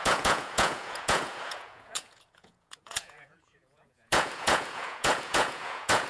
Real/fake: fake